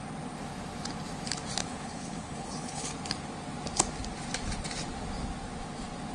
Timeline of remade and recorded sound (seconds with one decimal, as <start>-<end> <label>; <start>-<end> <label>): 0.0-1.6 recorded; 1.6-2.9 remade; 2.9-6.1 recorded